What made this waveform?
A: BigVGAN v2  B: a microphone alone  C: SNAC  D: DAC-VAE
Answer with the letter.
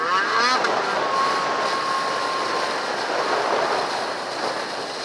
B